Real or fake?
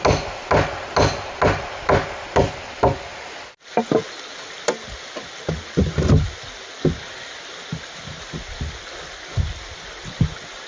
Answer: real